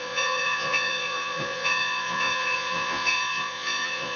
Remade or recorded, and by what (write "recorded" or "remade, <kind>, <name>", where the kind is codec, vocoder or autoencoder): remade, vocoder, Vocos